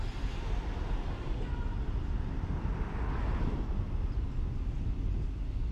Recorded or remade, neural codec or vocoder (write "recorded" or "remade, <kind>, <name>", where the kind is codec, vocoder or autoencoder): recorded